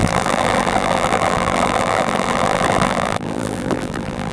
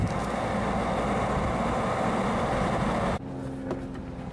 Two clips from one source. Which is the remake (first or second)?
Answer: first